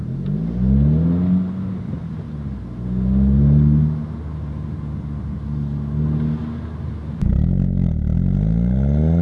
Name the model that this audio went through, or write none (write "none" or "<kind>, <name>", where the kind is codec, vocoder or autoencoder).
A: none